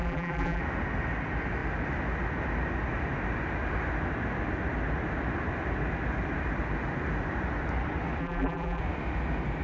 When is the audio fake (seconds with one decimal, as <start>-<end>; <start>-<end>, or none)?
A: 0.0-0.6; 8.2-8.8